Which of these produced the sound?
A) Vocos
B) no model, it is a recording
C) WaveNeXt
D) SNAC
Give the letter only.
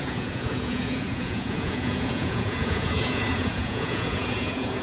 A